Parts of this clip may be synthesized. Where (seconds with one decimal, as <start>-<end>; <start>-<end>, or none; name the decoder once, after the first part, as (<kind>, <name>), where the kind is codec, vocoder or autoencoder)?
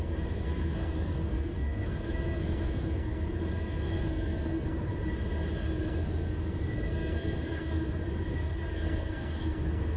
0.0-4.9 (codec, SNAC); 5.8-8.0; 8.7-10.0